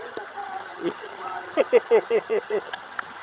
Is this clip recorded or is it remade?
remade